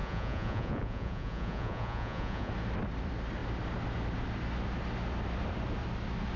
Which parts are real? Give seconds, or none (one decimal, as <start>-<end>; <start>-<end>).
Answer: 2.5-6.4